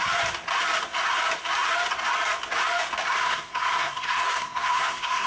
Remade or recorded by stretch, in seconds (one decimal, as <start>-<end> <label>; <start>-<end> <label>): 0.0-3.2 recorded; 3.2-5.3 remade